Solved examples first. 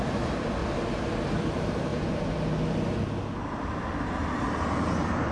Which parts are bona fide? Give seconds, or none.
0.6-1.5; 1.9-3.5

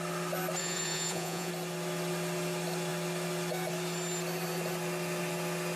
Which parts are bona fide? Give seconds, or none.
0.0-0.6; 1.5-5.8

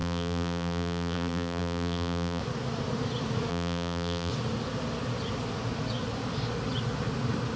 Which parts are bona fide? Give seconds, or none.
2.4-3.5; 4.3-7.6

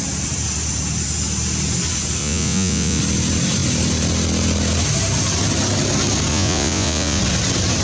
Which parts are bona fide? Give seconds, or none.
0.0-2.2; 3.0-6.3; 7.2-7.8

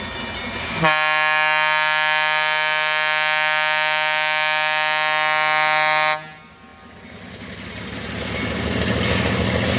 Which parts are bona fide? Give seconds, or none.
0.0-9.8

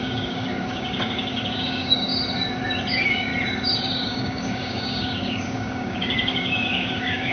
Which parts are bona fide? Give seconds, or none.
2.1-2.9; 3.3-3.8